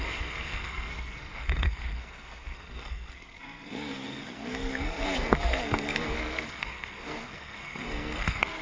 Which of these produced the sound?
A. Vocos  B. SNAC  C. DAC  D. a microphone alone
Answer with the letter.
B